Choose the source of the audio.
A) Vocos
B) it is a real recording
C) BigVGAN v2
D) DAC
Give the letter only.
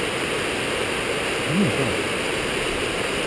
B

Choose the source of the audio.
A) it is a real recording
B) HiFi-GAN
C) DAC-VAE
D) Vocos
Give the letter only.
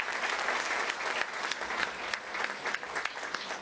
A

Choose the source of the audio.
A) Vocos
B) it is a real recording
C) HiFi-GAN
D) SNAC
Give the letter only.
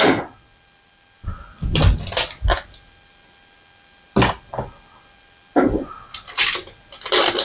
B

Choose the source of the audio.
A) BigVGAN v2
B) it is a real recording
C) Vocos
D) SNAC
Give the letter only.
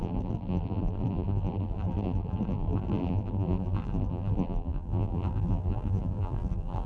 A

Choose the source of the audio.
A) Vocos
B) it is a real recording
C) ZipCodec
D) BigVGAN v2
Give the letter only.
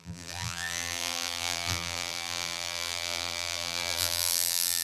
D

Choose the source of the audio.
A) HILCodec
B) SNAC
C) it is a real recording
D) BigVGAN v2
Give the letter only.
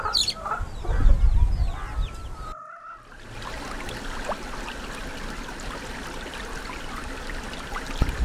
C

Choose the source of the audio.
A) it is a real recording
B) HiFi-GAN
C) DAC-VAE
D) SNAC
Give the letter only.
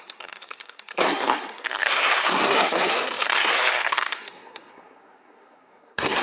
D